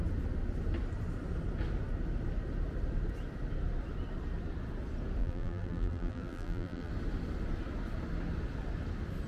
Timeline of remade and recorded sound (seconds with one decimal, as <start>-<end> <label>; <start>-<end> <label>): 0.0-5.2 recorded; 5.2-6.9 remade; 6.9-9.3 recorded